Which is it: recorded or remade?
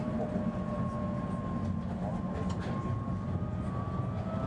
recorded